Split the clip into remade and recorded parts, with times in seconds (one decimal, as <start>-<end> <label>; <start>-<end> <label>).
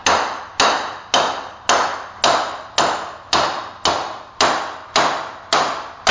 0.0-6.1 recorded